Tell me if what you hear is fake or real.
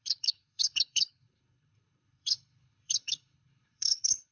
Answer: fake